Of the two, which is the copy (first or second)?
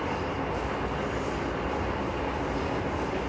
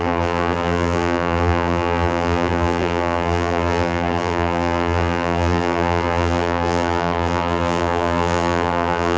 second